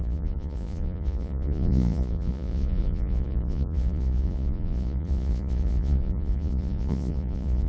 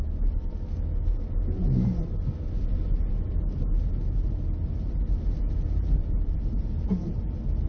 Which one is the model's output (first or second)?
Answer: first